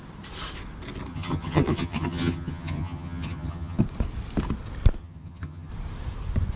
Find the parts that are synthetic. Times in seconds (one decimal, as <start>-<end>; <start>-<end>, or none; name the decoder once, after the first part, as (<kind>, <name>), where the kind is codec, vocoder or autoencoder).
1.1-3.8 (vocoder, HiFi-GAN); 5.0-5.7